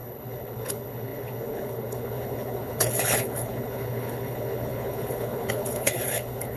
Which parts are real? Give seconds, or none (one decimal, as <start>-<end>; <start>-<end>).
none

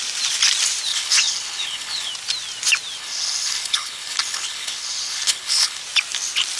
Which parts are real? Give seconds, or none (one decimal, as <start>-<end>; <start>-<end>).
0.0-0.9; 2.1-3.0; 5.8-6.6

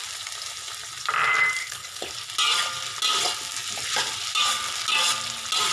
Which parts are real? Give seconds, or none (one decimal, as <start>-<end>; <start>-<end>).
0.0-1.6; 2.1-5.7